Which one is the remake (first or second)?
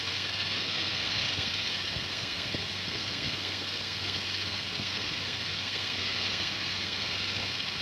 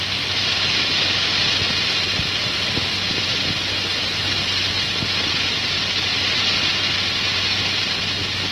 first